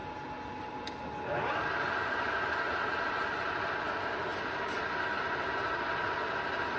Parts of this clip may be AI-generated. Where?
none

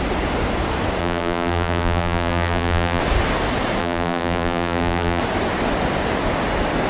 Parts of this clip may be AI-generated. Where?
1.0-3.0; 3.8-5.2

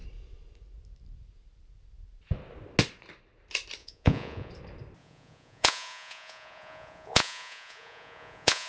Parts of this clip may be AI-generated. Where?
3.8-4.5; 5.0-8.7

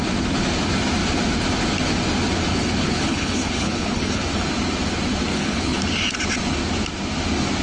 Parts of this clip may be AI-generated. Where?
2.5-4.2; 5.3-5.8